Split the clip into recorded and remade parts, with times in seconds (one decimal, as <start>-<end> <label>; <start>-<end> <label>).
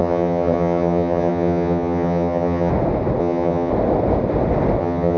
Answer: 0.0-2.7 remade; 2.7-3.2 recorded; 3.2-3.7 remade; 3.7-4.8 recorded; 4.8-5.2 remade